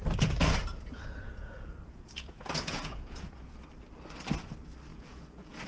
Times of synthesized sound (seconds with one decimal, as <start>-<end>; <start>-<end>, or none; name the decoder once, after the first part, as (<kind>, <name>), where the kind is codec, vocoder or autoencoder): 0.7-3.5 (vocoder, Vocos); 4.9-5.7